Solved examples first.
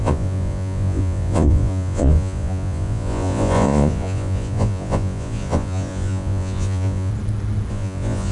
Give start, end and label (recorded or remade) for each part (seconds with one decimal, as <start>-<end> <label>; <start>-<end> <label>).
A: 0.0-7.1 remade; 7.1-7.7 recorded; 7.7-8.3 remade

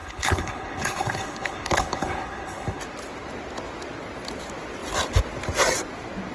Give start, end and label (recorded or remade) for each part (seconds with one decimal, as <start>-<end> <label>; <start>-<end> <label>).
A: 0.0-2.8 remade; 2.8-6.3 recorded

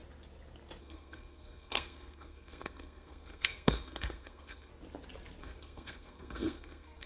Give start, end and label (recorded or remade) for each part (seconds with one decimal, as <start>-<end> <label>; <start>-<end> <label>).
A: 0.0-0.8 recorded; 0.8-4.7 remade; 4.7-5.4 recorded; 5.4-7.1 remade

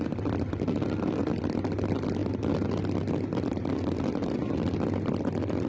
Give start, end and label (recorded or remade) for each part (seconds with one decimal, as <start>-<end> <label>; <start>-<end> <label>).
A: 0.0-5.7 recorded

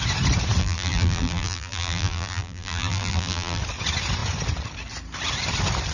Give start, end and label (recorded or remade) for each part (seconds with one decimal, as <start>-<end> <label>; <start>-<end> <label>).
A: 0.0-0.6 recorded; 0.6-3.6 remade; 3.6-5.9 recorded

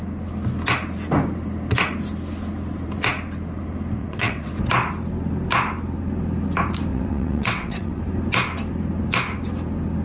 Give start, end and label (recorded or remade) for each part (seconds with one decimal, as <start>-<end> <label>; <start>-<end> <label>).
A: 0.0-4.0 recorded; 4.0-4.5 remade; 4.5-6.9 recorded; 6.9-8.0 remade; 8.0-10.0 recorded

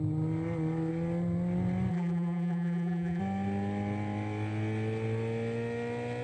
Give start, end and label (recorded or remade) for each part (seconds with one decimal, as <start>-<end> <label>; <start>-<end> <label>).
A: 0.0-1.9 recorded; 1.9-3.2 remade; 3.2-6.2 recorded